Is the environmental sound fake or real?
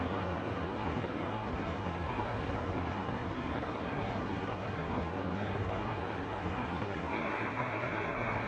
fake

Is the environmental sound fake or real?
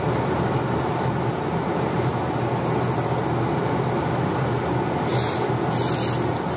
real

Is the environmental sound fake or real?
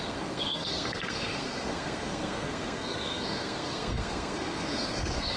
fake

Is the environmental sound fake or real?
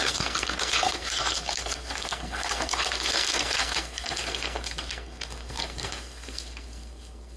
fake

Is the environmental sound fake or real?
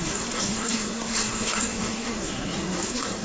fake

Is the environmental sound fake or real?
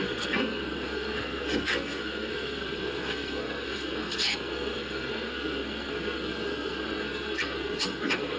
fake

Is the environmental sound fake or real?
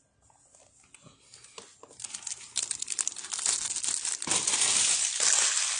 real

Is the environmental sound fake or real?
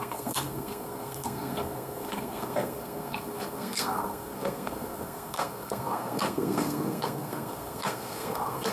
fake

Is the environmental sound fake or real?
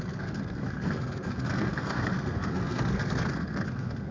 fake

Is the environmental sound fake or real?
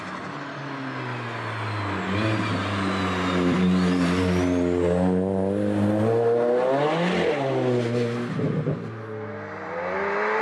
real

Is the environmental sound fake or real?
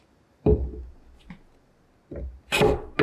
real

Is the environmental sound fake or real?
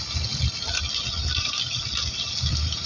real